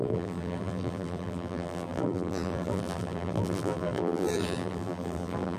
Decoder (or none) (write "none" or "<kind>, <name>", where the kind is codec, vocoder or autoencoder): vocoder, BigVGAN v2